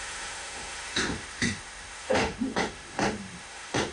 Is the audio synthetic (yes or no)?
yes